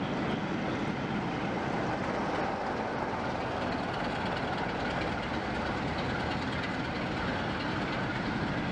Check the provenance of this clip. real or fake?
real